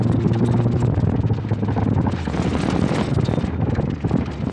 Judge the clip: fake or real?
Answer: real